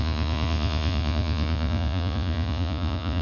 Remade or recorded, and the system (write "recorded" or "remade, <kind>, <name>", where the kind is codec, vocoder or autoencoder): remade, vocoder, Vocos